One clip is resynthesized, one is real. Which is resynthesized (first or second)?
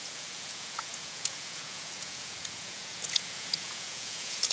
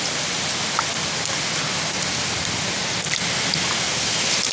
first